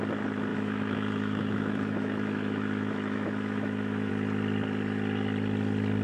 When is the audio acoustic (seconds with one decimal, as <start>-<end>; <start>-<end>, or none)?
0.0-0.5; 4.1-6.0